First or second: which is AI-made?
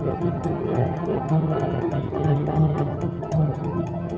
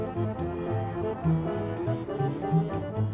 first